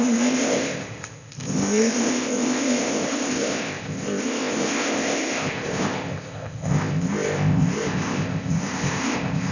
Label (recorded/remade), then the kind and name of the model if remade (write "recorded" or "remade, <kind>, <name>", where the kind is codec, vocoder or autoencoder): remade, codec, ZipCodec